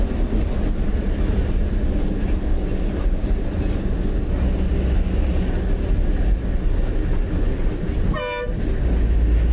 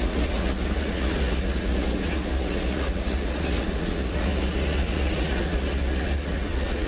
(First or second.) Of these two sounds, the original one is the first